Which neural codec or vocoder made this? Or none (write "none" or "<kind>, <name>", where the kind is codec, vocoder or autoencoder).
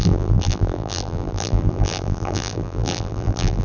vocoder, BigVGAN v2